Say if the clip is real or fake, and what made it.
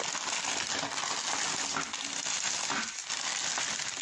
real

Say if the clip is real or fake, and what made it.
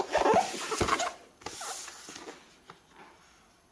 real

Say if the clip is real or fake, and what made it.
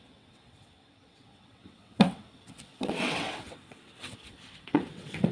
fake, vocoder, WaveNeXt